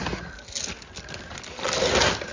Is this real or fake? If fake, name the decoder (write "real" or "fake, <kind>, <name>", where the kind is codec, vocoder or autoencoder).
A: real